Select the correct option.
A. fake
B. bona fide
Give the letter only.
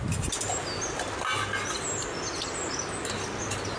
B